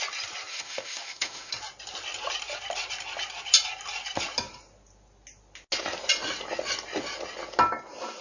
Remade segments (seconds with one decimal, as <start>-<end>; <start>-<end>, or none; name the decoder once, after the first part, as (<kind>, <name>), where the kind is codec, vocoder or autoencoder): 0.5-1.5 (autoencoder, DAC-VAE)